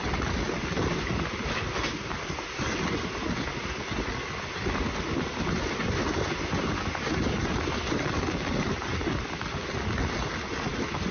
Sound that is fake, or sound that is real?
real